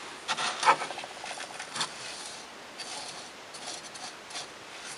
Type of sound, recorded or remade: recorded